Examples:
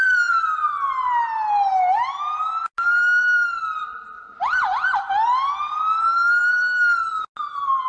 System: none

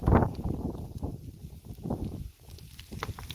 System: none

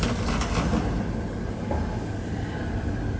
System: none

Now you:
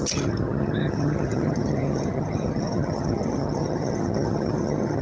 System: vocoder, HiFi-GAN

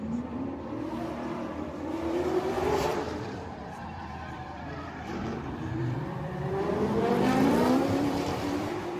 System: vocoder, BigVGAN v2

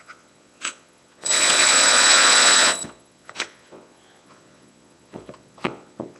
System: vocoder, Vocos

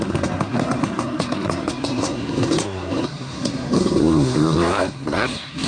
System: codec, SNAC